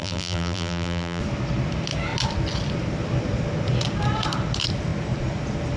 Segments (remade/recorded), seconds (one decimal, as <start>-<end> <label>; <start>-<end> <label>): 0.0-1.2 remade; 1.2-5.8 recorded